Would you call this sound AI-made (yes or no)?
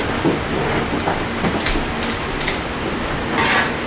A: no